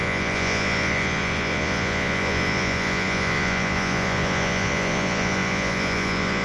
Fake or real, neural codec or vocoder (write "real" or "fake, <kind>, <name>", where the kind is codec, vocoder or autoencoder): fake, vocoder, Vocos